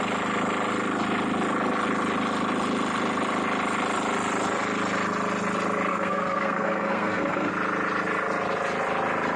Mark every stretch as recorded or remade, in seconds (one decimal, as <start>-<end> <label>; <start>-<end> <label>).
0.0-5.9 recorded; 5.9-7.5 remade; 7.5-9.4 recorded